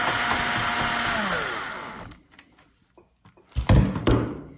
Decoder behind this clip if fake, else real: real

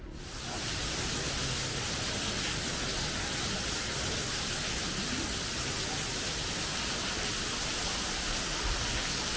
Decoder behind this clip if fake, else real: real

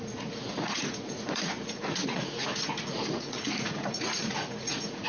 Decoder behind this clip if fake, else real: fake, vocoder, Vocos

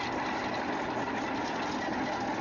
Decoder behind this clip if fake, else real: real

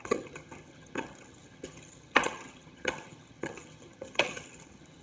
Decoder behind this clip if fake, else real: fake, vocoder, HiFi-GAN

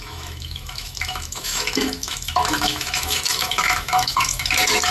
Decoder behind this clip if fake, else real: fake, autoencoder, DAC-VAE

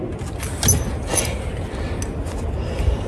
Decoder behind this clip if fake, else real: real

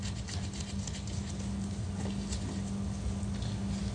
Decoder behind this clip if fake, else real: real